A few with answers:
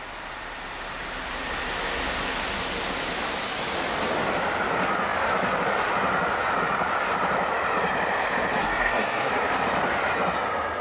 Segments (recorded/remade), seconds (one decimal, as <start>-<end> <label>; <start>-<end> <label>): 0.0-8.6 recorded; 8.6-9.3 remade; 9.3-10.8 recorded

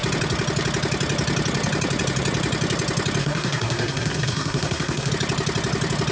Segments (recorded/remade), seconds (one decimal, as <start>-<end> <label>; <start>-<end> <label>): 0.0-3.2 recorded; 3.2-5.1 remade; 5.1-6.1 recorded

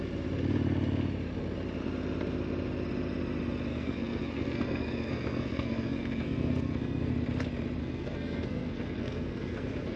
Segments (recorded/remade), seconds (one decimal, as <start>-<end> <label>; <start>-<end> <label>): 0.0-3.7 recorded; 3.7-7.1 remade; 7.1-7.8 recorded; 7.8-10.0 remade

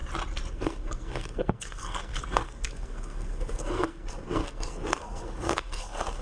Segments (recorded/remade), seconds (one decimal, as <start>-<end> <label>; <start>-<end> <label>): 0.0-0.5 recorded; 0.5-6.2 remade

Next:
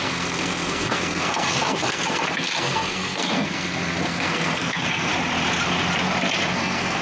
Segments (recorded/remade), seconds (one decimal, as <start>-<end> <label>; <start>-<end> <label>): 0.0-5.1 remade; 5.1-6.5 recorded; 6.5-7.0 remade

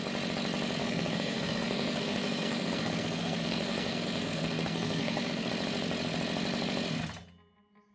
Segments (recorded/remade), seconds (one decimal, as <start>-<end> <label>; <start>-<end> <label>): 0.0-0.8 recorded; 0.8-5.5 remade; 5.5-7.9 recorded

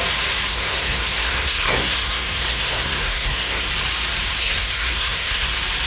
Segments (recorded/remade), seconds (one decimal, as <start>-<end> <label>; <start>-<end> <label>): 0.0-0.5 recorded; 0.5-3.7 remade; 3.7-4.4 recorded; 4.4-5.5 remade; 5.5-5.9 recorded

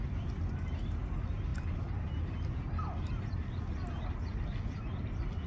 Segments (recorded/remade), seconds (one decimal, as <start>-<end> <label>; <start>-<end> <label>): 0.0-5.5 recorded